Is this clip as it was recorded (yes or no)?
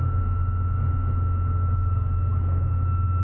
yes